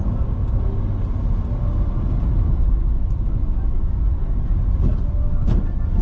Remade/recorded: recorded